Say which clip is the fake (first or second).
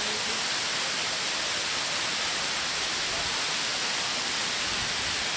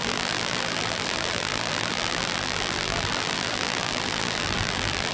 second